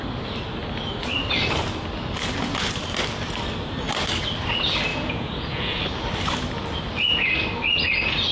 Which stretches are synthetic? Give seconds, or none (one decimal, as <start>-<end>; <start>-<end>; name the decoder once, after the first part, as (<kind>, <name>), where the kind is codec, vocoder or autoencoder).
4.9-5.8 (vocoder, Vocos)